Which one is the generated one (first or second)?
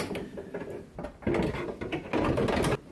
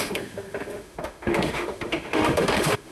second